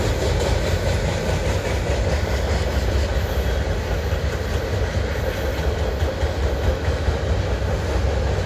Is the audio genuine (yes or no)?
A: yes